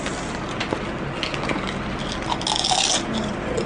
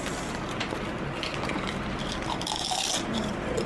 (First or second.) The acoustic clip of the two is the first